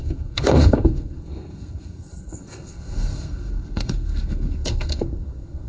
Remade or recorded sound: remade